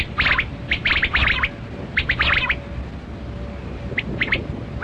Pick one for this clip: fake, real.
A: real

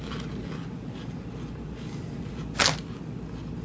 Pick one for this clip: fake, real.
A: real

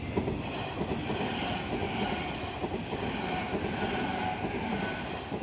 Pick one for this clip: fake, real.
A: real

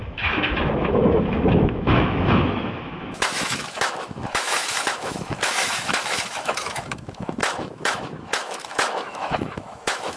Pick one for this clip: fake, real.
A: fake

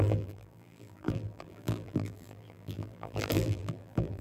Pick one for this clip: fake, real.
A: fake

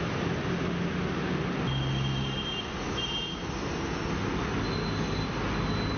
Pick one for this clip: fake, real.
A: real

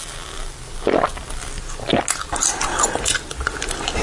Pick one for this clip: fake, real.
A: real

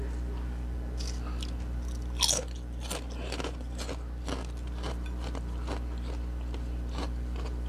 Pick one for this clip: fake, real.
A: real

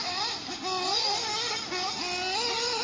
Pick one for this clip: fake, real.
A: real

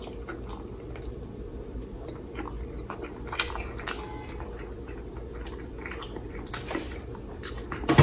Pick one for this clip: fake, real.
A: real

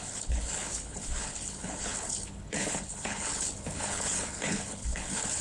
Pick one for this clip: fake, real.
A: fake